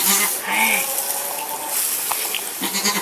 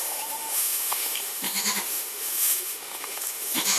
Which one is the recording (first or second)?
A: first